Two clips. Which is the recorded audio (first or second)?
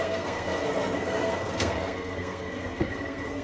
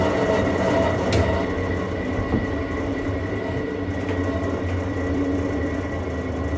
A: second